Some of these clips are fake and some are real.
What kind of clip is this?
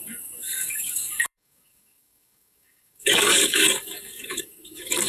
fake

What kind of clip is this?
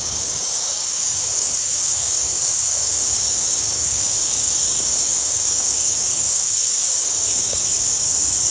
fake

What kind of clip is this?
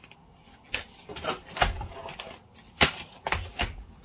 real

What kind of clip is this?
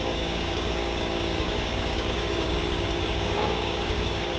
fake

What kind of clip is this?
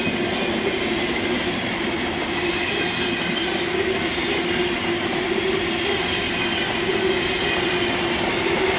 real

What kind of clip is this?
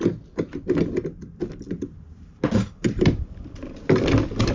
real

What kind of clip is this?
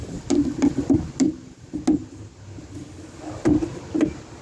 real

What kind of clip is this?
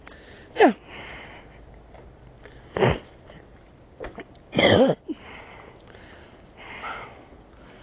real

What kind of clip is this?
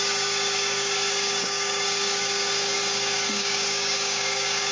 fake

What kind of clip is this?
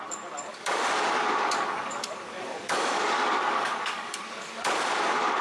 fake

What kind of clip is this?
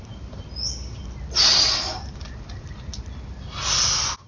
real